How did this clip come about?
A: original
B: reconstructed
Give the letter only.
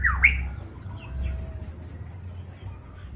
A